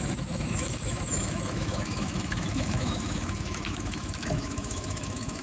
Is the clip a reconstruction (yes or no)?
yes